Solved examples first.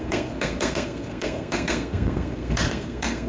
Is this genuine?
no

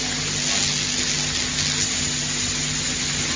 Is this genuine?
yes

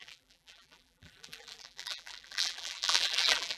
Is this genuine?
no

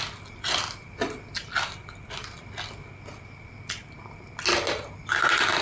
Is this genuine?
yes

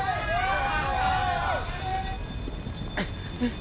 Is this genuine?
yes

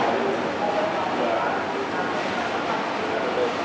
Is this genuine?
yes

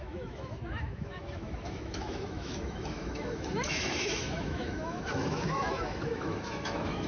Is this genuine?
no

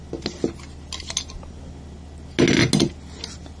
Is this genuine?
yes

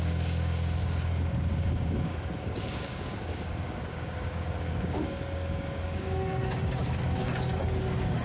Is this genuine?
no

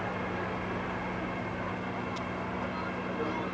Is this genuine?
yes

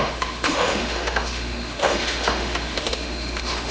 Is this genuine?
no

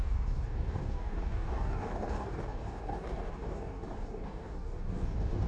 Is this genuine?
no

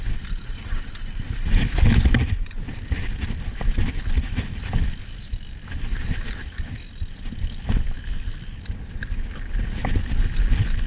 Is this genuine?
yes